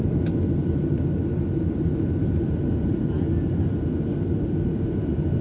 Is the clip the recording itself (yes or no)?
yes